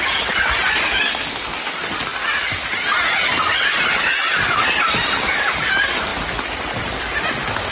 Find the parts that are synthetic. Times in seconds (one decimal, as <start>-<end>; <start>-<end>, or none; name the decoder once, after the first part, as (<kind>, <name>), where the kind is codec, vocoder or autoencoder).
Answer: 1.1-1.6 (codec, SNAC)